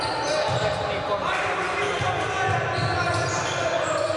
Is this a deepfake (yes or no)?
no